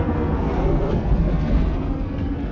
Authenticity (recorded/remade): remade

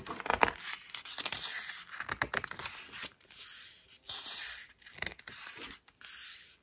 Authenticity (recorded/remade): recorded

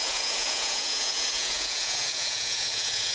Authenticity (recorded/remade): remade